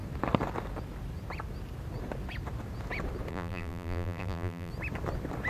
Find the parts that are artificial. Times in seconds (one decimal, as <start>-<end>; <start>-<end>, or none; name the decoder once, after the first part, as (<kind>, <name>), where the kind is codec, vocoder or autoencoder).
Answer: 3.3-4.7 (vocoder, BigVGAN v2)